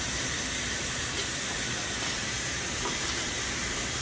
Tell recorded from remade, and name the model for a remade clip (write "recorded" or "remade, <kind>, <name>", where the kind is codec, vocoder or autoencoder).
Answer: remade, vocoder, BigVGAN v2